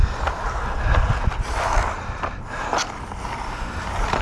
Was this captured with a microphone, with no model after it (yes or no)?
yes